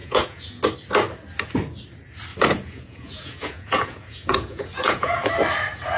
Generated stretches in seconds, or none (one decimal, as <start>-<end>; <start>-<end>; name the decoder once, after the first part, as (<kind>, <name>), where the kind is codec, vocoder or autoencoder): 0.0-0.6 (vocoder, Vocos); 2.3-5.3